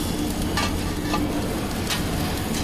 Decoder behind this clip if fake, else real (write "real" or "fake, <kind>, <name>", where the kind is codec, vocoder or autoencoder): real